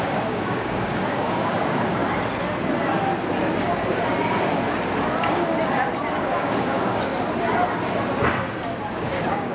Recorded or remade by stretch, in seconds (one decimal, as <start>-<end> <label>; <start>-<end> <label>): 0.0-2.0 remade; 2.0-6.2 recorded; 6.2-7.1 remade; 7.1-8.9 recorded; 8.9-9.5 remade